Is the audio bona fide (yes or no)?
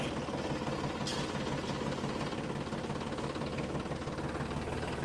yes